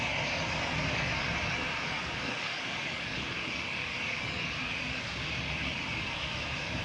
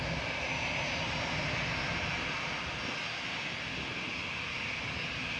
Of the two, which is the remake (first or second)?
first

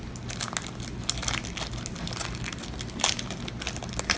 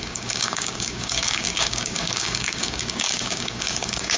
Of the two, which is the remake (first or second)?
second